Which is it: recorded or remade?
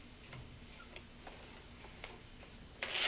recorded